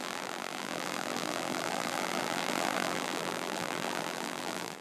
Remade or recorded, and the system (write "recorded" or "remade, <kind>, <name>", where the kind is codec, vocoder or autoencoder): remade, vocoder, BigVGAN v2